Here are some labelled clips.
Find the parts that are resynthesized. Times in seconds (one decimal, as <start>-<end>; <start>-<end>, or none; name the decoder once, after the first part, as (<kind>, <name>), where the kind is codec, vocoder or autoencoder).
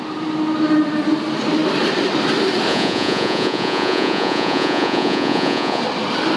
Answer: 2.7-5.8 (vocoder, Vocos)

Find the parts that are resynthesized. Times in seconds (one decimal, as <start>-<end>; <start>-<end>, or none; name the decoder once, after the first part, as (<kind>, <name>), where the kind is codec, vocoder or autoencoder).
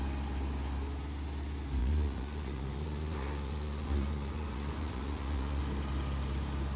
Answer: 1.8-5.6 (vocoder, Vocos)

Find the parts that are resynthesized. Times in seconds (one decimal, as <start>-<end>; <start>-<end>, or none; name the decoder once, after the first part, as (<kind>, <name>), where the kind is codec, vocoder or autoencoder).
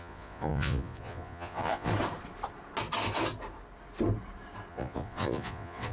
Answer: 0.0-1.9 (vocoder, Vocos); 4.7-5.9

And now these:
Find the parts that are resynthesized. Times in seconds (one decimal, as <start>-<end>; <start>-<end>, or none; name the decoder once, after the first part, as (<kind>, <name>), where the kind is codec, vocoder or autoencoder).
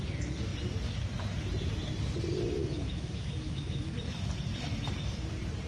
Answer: 2.6-3.8 (autoencoder, DAC-VAE)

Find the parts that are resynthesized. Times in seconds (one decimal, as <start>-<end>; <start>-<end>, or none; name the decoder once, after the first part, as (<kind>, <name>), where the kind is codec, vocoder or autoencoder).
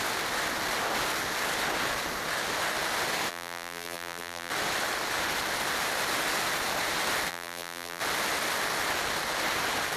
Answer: 3.3-4.5 (vocoder, BigVGAN v2); 7.3-8.0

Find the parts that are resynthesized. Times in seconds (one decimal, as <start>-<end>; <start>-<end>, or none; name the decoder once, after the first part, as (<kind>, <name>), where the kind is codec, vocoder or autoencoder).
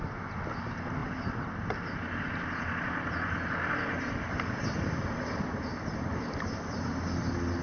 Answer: none